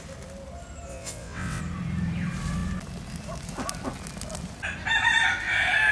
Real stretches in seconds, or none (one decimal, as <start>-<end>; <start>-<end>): 0.0-0.9; 1.6-5.9